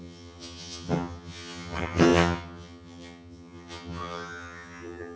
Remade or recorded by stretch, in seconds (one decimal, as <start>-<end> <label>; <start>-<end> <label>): 0.0-5.2 remade